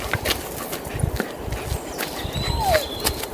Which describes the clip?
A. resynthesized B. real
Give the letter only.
B